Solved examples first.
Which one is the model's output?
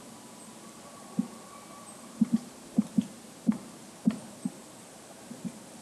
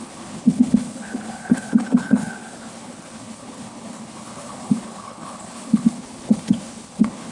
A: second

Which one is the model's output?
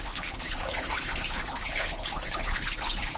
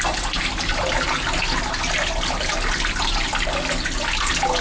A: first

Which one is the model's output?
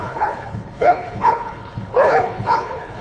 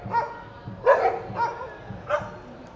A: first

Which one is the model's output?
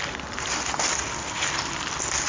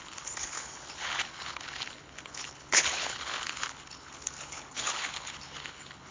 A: second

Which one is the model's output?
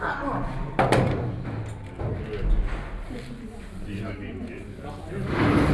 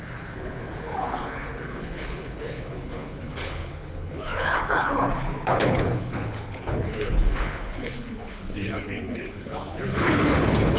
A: second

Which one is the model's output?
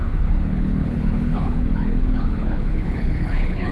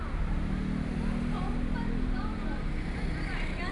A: first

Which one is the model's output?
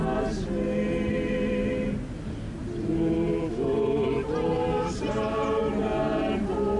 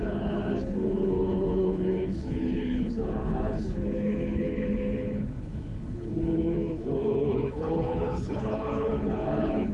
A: second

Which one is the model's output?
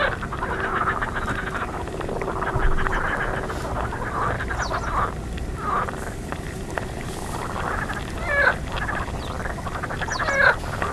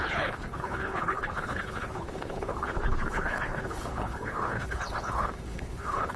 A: second